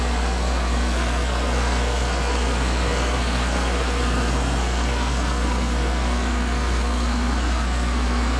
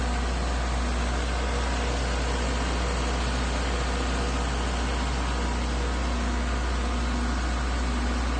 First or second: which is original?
second